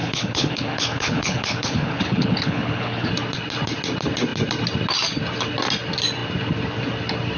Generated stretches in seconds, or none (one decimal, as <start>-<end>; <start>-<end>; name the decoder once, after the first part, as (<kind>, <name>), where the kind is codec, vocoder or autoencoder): 0.0-3.1 (codec, HILCodec)